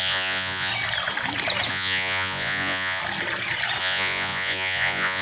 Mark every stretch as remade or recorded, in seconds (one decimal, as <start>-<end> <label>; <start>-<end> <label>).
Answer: 0.0-0.7 remade; 0.7-1.7 recorded; 1.7-3.0 remade; 3.0-3.8 recorded; 3.8-5.2 remade